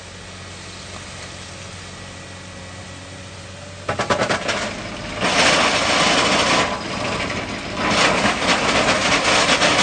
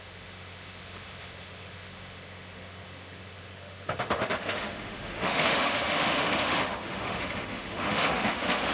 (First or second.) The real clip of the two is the first